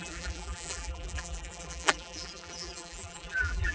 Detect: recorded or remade remade